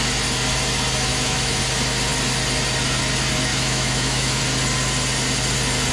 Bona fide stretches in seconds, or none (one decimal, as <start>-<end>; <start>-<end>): 0.0-1.1; 1.6-3.5; 4.4-5.9